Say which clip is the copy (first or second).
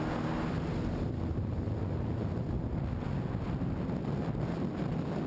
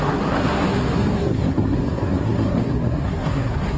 second